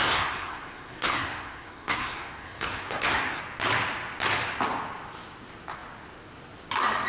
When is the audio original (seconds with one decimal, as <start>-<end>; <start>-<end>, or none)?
3.4-7.1